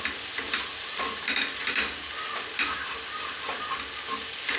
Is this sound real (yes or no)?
yes